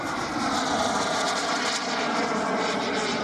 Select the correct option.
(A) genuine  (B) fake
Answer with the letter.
A